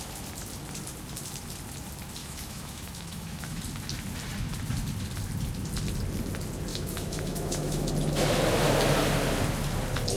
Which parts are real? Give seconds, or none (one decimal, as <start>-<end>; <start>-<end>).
0.0-2.2; 3.6-6.7; 7.9-10.2